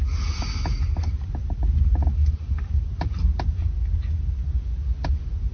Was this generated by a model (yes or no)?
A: no